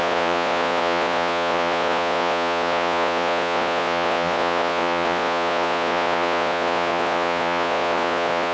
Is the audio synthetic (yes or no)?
yes